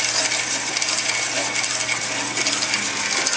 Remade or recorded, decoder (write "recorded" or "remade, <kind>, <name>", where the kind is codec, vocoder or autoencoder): recorded